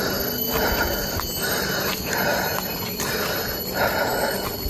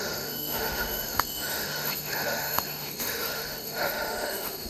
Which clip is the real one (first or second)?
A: first